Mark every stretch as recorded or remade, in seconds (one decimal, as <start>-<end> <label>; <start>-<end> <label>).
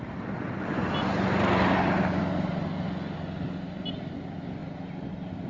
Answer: 0.0-5.5 recorded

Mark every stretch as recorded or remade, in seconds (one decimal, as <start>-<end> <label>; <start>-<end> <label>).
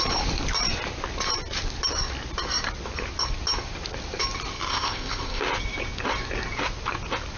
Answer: 0.0-4.7 recorded; 4.7-5.4 remade; 5.4-7.4 recorded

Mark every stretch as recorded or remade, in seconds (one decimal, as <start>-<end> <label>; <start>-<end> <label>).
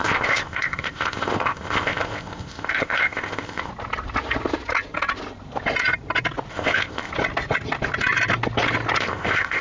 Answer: 0.0-3.7 remade; 3.7-6.5 recorded; 6.5-7.1 remade; 7.1-9.0 recorded; 9.0-9.6 remade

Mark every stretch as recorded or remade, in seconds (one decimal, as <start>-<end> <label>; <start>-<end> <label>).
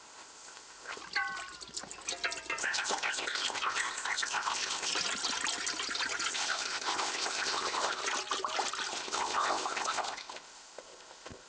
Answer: 0.0-1.0 remade; 1.0-2.6 recorded; 2.6-4.9 remade; 4.9-6.3 recorded; 6.3-8.0 remade; 8.0-8.9 recorded; 8.9-11.5 remade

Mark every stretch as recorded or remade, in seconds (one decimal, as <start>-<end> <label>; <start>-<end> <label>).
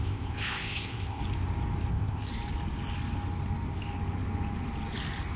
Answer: 0.0-1.2 remade; 1.2-1.9 recorded; 1.9-2.3 remade; 2.3-5.4 recorded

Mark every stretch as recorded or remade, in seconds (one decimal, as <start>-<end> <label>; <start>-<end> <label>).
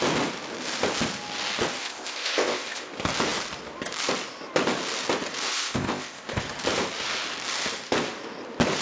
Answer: 0.0-1.8 recorded; 1.8-2.9 remade; 2.9-5.5 recorded; 5.5-6.4 remade; 6.4-8.8 recorded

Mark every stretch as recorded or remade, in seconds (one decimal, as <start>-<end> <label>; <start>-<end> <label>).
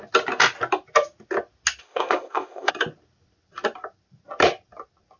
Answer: 0.0-1.8 recorded; 1.8-2.7 remade; 2.7-5.2 recorded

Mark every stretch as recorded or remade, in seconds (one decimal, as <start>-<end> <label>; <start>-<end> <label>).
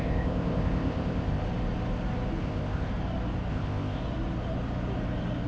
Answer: 0.0-1.4 remade; 1.4-2.4 recorded; 2.4-2.9 remade; 2.9-3.5 recorded; 3.5-4.0 remade; 4.0-5.5 recorded